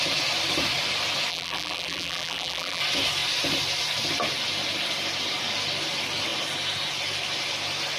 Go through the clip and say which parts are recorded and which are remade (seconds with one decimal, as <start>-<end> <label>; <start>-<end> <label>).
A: 0.0-1.3 recorded; 1.3-2.8 remade; 2.8-8.0 recorded